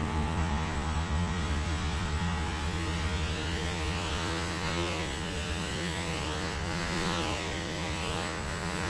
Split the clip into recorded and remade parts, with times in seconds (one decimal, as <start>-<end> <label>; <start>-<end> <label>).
0.0-8.9 remade